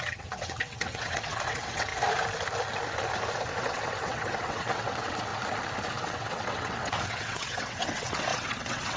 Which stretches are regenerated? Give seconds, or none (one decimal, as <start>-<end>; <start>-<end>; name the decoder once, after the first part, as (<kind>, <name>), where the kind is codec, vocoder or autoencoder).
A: 0.0-1.9 (vocoder, WaveNeXt); 3.6-5.3; 6.0-9.0